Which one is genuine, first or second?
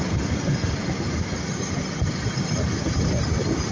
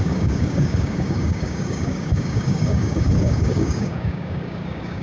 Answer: first